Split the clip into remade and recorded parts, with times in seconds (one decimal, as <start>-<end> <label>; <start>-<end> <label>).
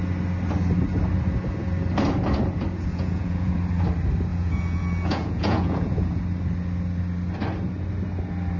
0.0-2.9 recorded; 2.9-3.5 remade; 3.5-4.3 recorded; 4.3-6.2 remade; 6.2-8.6 recorded